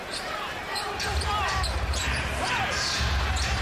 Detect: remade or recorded remade